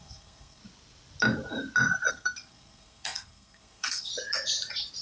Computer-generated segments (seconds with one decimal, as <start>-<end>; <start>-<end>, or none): 0.0-0.6; 2.1-4.1